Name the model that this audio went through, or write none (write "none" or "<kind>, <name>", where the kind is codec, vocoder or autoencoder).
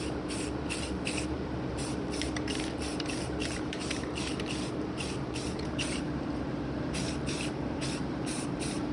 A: vocoder, BigVGAN v2